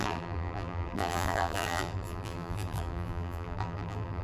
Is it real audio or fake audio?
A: fake